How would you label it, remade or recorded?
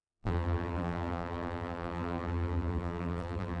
remade